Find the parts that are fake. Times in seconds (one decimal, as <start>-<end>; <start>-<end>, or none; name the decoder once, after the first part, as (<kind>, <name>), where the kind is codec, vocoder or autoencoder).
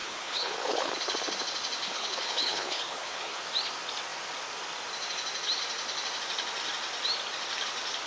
0.0-0.9 (codec, HILCodec); 1.9-3.4